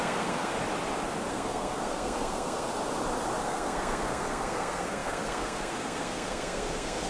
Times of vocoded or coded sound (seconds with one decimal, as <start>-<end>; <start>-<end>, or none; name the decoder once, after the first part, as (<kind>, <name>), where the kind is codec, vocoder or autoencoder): 0.0-0.5 (codec, SNAC); 1.3-2.7; 3.4-7.1